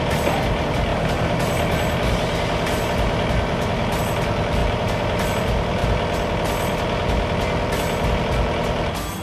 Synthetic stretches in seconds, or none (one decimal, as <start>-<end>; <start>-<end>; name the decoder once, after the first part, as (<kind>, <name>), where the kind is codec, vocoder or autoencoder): 0.9-4.0 (vocoder, BigVGAN v2); 4.6-5.3